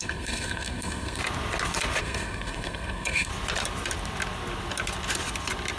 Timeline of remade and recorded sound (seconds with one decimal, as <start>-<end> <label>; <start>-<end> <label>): 0.0-1.2 remade; 1.2-2.0 recorded; 2.0-3.3 remade; 3.3-5.8 recorded